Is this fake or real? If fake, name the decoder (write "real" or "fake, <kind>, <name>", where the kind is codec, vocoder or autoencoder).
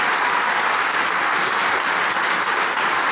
real